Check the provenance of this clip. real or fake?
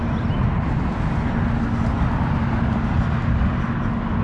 real